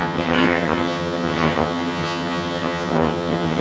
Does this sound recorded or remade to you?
remade